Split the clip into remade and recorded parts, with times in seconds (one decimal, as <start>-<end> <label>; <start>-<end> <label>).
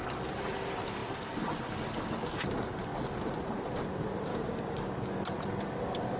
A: 0.0-4.3 recorded; 4.3-4.9 remade; 4.9-6.2 recorded